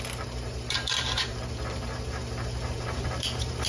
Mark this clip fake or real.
fake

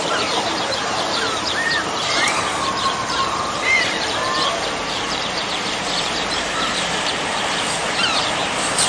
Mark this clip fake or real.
fake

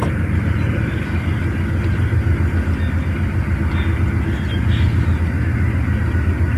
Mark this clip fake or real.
real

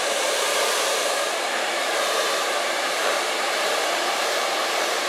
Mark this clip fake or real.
fake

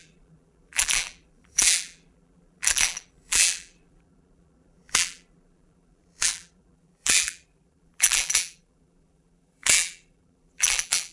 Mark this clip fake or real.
fake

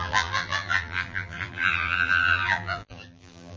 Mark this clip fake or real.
fake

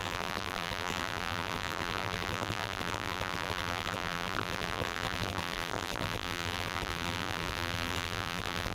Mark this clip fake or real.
fake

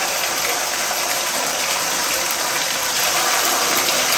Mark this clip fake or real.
fake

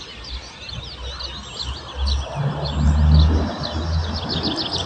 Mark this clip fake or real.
real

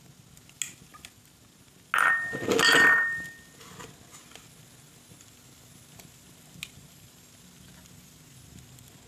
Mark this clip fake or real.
real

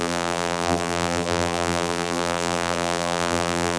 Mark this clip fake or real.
fake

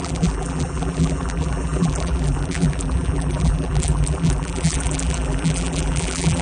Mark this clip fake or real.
fake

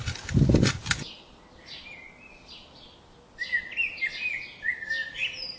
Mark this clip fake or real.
real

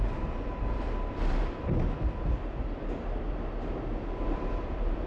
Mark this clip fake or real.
fake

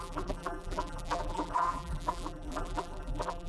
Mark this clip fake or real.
fake